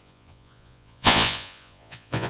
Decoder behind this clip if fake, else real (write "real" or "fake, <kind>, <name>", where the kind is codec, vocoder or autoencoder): fake, vocoder, Vocos